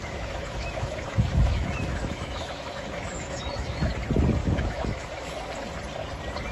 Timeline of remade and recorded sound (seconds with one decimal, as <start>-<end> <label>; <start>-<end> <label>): 0.0-3.9 remade; 3.9-4.4 recorded; 4.4-5.5 remade; 5.5-6.5 recorded